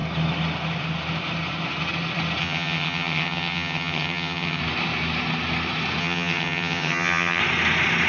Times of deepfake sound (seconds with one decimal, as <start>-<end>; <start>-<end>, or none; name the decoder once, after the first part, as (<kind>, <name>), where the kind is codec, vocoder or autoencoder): 2.4-4.6 (vocoder, HiFi-GAN); 6.0-7.4